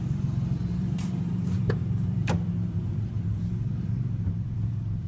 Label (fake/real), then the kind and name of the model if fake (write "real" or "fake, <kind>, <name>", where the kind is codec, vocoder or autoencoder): fake, vocoder, BigVGAN v2